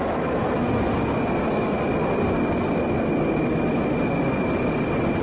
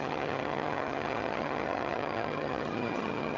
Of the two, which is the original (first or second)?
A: first